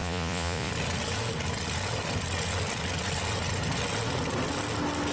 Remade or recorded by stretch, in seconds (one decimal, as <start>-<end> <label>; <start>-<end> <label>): 0.0-0.7 remade; 0.7-5.1 recorded